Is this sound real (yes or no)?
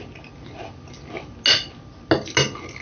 yes